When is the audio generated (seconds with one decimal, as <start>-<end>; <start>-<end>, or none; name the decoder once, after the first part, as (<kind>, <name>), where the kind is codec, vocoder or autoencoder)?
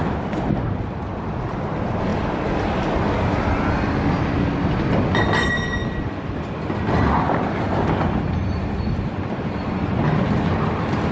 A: none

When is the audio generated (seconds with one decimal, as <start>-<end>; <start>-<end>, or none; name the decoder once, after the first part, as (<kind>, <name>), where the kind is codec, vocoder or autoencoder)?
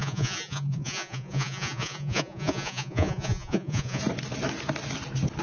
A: 0.0-4.0 (vocoder, Vocos)